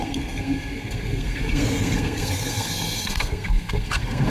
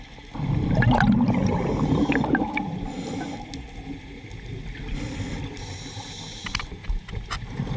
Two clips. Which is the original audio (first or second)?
second